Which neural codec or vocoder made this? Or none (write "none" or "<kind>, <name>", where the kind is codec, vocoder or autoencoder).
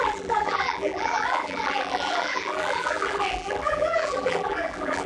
vocoder, BigVGAN v2